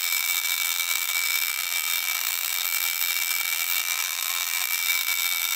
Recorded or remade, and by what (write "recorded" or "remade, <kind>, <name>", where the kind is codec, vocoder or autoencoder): remade, vocoder, BigVGAN v2